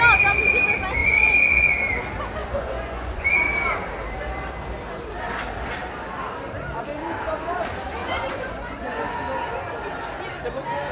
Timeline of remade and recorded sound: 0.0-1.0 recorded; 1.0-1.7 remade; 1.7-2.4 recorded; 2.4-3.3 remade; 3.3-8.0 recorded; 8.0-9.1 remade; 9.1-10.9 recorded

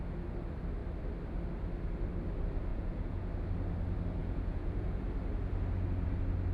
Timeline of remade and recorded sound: 0.0-2.7 recorded; 2.7-3.3 remade; 3.3-4.2 recorded; 4.2-5.0 remade; 5.0-6.5 recorded

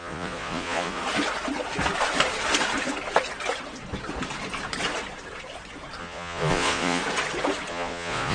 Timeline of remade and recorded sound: 0.0-1.0 remade; 1.0-6.0 recorded; 6.0-7.0 remade; 7.0-7.7 recorded; 7.7-8.3 remade

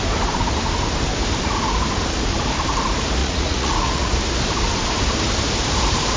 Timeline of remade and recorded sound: 0.0-3.2 recorded; 3.2-4.1 remade; 4.1-6.2 recorded

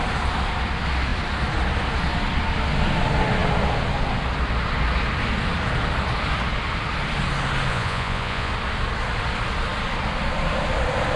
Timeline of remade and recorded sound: 0.0-7.7 recorded; 7.7-8.5 remade; 8.5-11.2 recorded

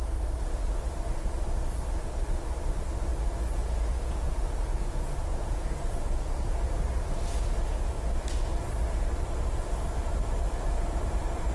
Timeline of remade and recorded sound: 0.0-3.1 recorded; 3.1-6.4 remade; 6.4-11.5 recorded

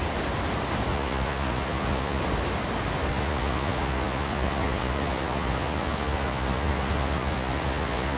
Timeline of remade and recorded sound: 0.0-0.9 recorded; 0.9-2.2 remade; 2.2-3.1 recorded; 3.1-8.2 remade

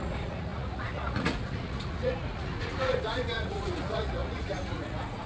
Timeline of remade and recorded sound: 0.0-5.3 remade